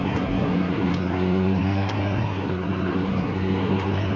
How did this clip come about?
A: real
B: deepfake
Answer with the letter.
B